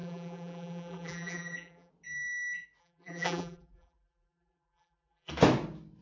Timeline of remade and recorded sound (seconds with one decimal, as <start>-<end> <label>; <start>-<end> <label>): 0.0-1.9 remade; 1.9-2.8 recorded; 2.8-5.3 remade; 5.3-6.0 recorded